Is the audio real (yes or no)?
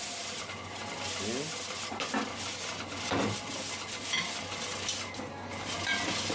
yes